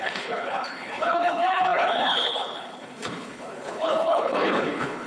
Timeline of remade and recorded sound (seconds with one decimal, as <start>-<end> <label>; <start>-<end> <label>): 0.0-5.1 remade